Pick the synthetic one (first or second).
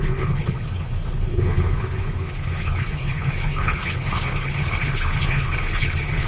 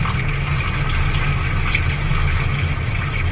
first